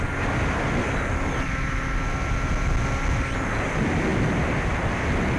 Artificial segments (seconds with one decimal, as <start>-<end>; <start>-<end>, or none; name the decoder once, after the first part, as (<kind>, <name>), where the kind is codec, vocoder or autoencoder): 4.1-4.7 (vocoder, BigVGAN v2)